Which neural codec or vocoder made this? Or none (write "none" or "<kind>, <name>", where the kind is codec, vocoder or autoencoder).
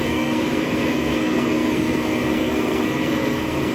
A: codec, SNAC